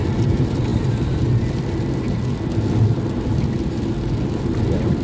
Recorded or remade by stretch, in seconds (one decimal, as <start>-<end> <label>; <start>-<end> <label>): 0.0-5.0 recorded